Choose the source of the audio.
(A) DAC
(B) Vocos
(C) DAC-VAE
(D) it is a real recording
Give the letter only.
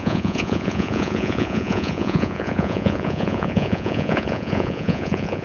B